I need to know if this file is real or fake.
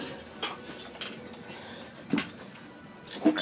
real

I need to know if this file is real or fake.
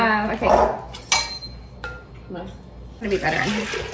real